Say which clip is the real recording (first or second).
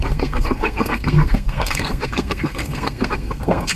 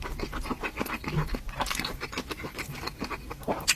second